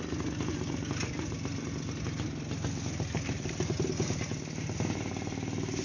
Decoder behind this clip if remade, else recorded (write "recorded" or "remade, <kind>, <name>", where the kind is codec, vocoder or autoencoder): recorded